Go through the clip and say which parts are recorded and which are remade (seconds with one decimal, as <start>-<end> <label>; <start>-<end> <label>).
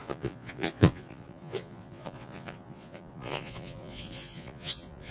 0.0-5.1 remade